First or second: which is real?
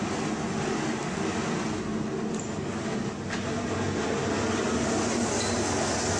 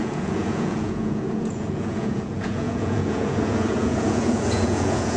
first